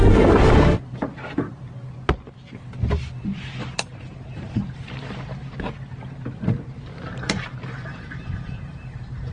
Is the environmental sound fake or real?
real